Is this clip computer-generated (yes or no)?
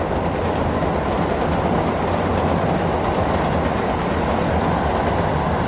no